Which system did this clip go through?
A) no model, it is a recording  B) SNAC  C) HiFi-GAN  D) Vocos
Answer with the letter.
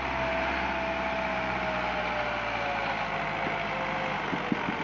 A